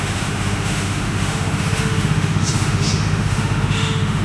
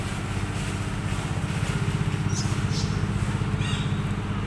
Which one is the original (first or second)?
second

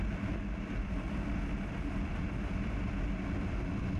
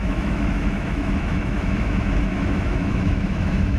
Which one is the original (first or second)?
first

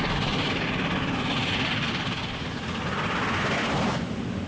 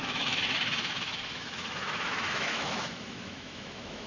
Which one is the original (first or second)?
first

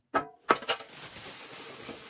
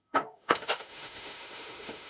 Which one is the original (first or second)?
first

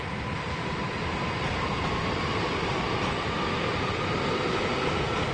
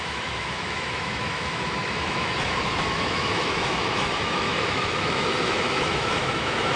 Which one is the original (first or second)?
first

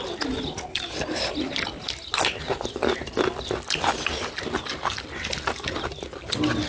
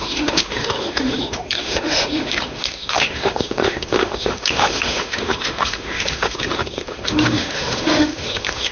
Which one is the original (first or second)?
first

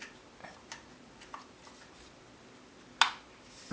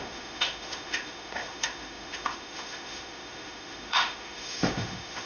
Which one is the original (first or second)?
first